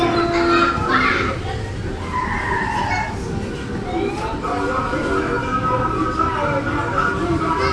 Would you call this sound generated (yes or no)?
no